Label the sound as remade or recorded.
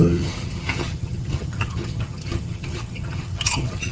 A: remade